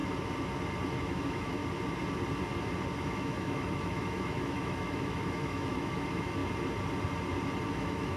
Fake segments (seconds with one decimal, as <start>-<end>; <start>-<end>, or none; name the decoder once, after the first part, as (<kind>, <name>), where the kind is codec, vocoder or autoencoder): 0.9-1.6 (autoencoder, DAC-VAE); 3.0-6.4; 7.7-8.2

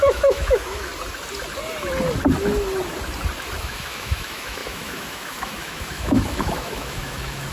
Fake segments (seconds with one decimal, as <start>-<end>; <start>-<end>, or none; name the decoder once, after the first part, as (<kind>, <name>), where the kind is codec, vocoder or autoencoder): 0.0-0.9 (autoencoder, DAC-VAE); 3.6-7.5

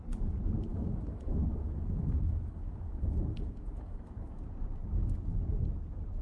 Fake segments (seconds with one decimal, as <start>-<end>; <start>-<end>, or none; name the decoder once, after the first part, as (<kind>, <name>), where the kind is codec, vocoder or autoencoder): 0.7-4.4 (autoencoder, DAC-VAE)

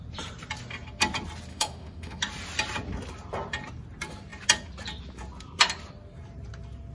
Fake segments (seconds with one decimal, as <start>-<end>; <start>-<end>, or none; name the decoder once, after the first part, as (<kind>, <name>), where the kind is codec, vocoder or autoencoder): 1.5-2.2 (autoencoder, DAC-VAE)